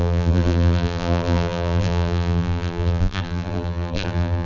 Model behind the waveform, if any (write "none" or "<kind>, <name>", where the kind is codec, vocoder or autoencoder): vocoder, BigVGAN v2